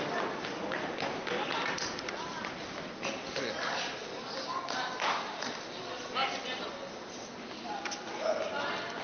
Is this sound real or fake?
real